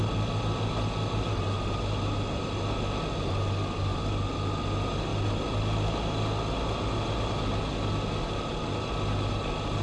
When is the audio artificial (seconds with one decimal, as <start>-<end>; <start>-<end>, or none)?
none